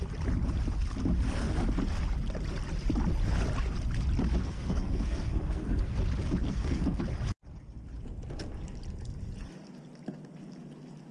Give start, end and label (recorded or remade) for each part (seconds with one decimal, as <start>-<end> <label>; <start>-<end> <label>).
0.0-4.4 recorded; 4.4-6.0 remade; 6.0-6.4 recorded; 6.4-7.0 remade; 7.0-11.1 recorded